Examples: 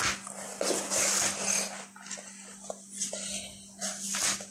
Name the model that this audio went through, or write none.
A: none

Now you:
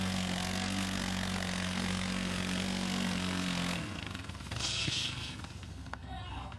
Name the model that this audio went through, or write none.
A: codec, SNAC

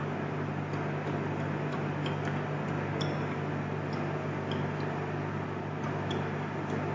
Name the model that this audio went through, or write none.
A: none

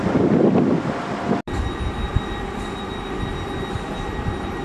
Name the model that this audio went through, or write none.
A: none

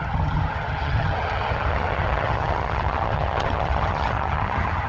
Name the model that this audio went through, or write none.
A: vocoder, HiFi-GAN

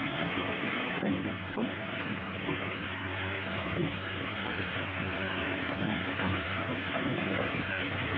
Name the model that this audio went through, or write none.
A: codec, SNAC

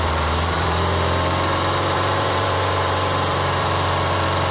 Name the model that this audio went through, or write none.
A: vocoder, BigVGAN v2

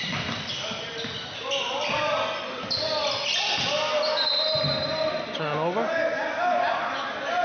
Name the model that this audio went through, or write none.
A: none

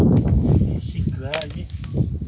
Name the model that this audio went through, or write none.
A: none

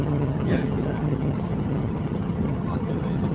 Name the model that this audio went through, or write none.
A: vocoder, HiFi-GAN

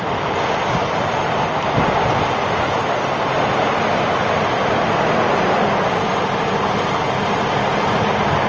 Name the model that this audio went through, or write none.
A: none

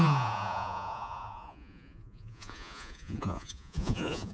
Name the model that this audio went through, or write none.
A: vocoder, Vocos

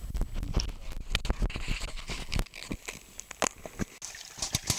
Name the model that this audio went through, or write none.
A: none